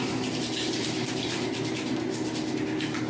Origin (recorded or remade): recorded